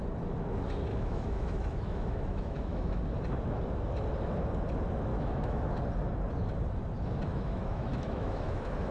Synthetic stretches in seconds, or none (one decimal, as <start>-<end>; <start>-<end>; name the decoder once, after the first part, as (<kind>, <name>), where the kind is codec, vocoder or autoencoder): 0.9-3.0 (autoencoder, DAC-VAE); 5.1-5.7; 7.3-8.9